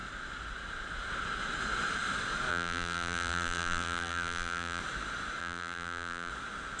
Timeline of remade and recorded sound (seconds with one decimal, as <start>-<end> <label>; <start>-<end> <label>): 0.0-2.5 recorded; 2.5-4.8 remade; 4.8-5.4 recorded; 5.4-6.3 remade; 6.3-6.8 recorded